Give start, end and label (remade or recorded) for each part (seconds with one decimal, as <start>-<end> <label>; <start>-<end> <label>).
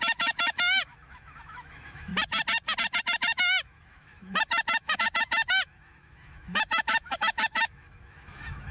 0.0-2.1 remade; 2.1-3.0 recorded; 3.0-8.7 remade